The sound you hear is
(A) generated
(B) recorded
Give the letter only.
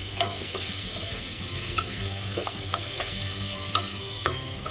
A